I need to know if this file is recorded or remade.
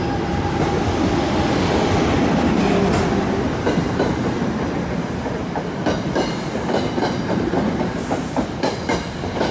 recorded